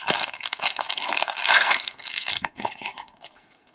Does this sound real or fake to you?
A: fake